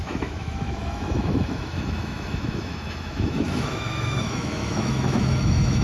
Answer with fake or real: fake